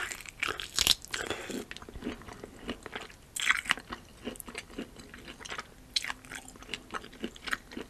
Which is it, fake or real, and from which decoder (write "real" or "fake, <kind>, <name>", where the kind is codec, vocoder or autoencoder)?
real